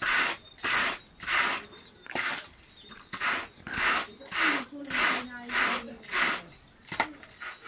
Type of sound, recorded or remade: recorded